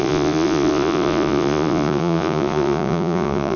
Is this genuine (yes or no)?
no